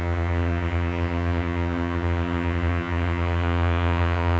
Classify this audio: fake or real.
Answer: fake